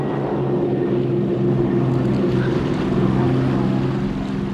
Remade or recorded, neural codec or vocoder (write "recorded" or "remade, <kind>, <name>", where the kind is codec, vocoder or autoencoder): recorded